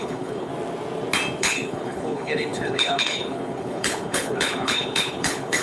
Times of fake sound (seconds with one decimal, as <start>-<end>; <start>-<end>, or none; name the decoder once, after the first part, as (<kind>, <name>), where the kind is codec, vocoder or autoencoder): 0.0-0.5 (codec, HILCodec); 1.4-5.6